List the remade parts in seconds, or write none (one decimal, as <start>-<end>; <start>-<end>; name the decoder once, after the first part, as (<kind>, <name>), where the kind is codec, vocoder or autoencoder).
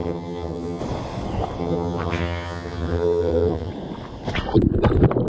0.0-0.8 (vocoder, HiFi-GAN); 1.6-3.7